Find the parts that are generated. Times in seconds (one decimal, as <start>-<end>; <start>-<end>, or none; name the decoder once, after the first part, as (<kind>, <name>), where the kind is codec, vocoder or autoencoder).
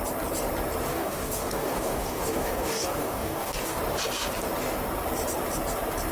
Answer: 0.9-3.8 (codec, DAC)